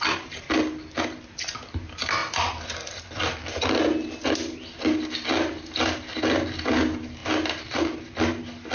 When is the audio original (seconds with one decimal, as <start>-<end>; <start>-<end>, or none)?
0.0-8.7